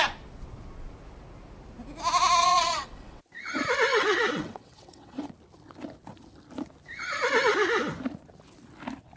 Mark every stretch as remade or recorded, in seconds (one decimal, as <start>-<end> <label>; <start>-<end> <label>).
0.0-2.4 recorded; 2.4-3.2 remade; 3.2-3.9 recorded; 3.9-5.3 remade; 5.3-9.2 recorded